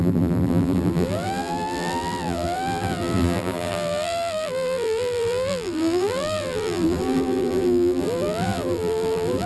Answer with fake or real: fake